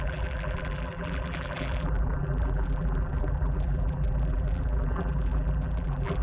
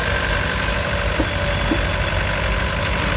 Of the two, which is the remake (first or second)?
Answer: first